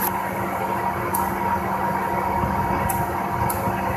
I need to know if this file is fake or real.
real